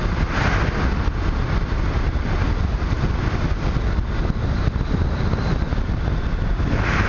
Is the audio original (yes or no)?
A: yes